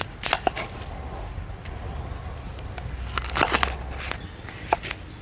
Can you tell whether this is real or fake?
real